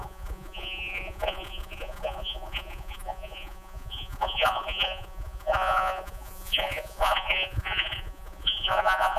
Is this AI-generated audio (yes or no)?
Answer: yes